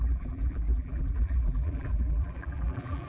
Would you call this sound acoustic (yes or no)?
no